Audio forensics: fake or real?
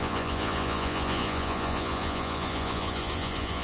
fake